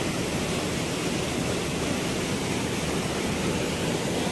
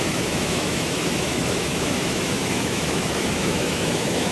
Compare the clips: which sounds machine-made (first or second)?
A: second